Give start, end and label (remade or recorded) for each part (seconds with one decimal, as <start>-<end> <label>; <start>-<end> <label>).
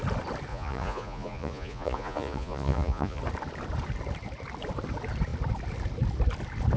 0.0-0.5 recorded; 0.5-3.2 remade; 3.2-6.8 recorded